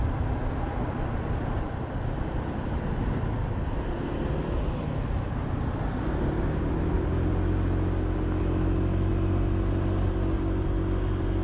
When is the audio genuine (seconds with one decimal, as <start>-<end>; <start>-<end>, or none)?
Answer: 3.0-11.4